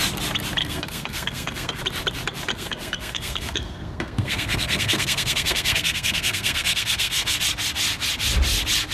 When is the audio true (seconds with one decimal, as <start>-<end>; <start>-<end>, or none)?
0.0-0.6; 1.8-2.5; 7.4-8.9